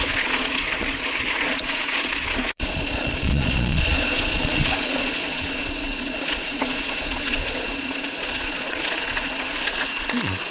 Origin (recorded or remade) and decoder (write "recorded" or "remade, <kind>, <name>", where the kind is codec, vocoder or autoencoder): remade, vocoder, Vocos